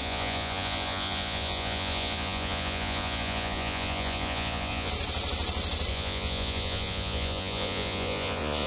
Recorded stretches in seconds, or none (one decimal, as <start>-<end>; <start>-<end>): 4.9-5.9